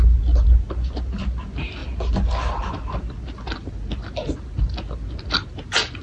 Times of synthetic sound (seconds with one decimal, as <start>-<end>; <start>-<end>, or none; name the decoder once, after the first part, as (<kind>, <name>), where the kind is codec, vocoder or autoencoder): none